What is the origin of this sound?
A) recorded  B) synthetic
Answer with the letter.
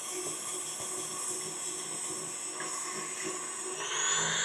A